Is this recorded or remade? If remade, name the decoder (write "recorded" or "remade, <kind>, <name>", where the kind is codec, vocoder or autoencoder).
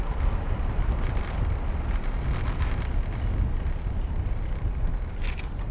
recorded